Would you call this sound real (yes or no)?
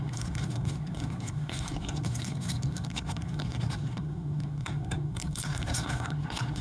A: no